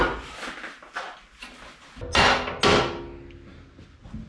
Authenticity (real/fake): real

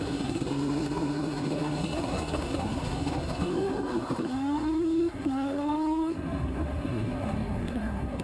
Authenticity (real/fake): fake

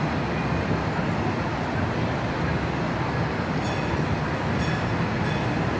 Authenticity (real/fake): real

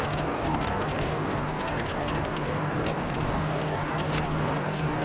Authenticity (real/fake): fake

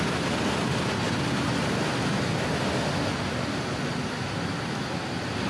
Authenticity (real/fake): real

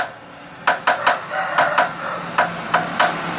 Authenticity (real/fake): real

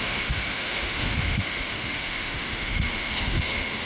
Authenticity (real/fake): fake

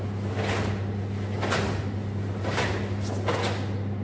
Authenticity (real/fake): real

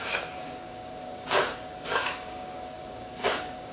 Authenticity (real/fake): fake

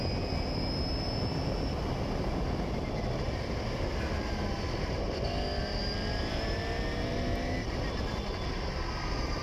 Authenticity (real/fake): real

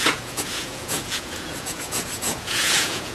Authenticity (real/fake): fake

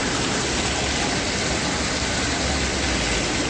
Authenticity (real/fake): real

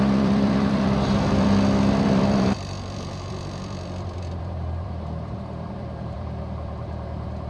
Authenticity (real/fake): fake